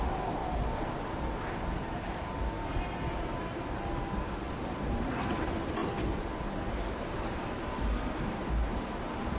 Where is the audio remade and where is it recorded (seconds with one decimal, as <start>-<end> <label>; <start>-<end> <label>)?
0.0-0.4 remade; 0.4-3.3 recorded; 3.3-5.8 remade; 5.8-6.7 recorded; 6.7-9.4 remade

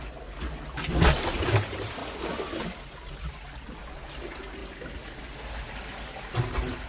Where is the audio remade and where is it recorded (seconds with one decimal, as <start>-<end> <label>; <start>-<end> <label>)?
0.0-6.9 recorded